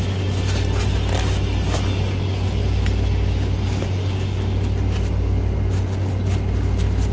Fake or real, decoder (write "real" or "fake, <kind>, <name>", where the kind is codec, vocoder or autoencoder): real